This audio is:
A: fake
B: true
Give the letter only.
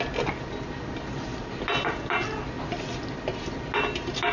B